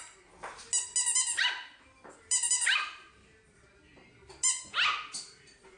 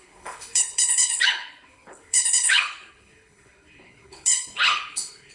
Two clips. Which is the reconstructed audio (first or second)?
second